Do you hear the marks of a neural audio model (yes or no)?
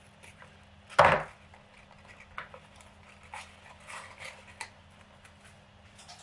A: no